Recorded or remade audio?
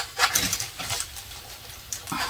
remade